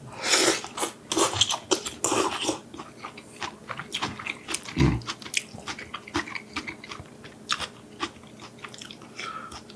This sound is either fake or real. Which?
real